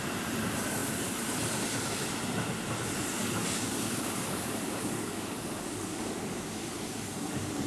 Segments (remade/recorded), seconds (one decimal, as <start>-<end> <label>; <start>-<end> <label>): 0.0-3.2 recorded; 3.2-7.7 remade